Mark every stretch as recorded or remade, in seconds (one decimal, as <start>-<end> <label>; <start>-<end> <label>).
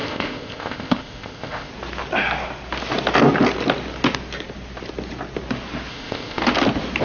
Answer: 0.0-1.7 remade; 1.7-5.9 recorded; 5.9-6.4 remade; 6.4-7.0 recorded